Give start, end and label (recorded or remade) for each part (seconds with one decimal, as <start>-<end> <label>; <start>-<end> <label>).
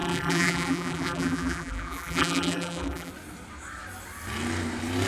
0.0-3.1 remade; 3.1-5.1 recorded